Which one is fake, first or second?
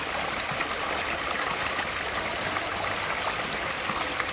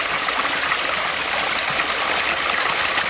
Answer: first